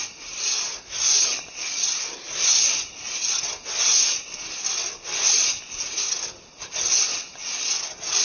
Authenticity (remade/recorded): recorded